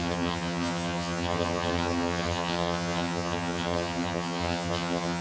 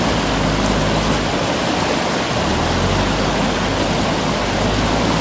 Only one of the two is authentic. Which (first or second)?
second